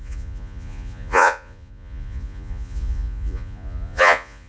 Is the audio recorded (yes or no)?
no